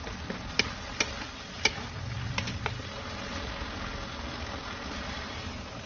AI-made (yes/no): no